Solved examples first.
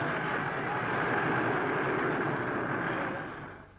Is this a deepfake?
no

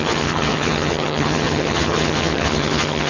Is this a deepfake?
yes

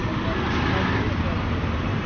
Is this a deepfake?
no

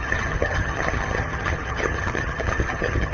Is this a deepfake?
yes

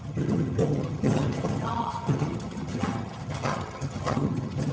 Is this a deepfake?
yes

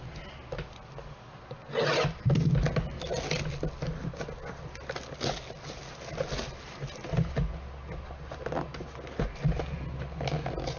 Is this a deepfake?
no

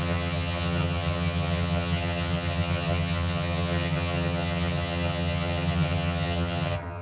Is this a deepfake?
yes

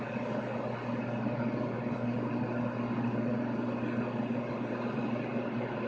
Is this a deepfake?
no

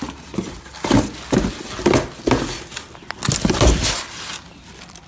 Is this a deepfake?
no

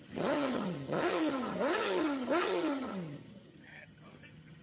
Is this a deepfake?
yes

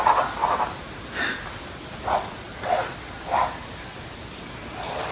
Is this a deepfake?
no